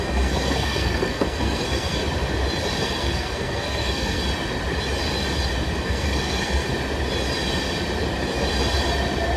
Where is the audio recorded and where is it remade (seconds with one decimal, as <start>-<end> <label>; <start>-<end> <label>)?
0.0-2.0 remade; 2.0-2.8 recorded; 2.8-4.2 remade; 4.2-5.8 recorded; 5.8-6.7 remade; 6.7-9.4 recorded